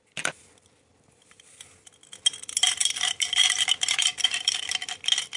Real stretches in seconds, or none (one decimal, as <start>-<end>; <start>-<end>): 0.0-2.8; 4.6-5.4